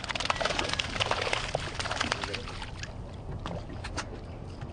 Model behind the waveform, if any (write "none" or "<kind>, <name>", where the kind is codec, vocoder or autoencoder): none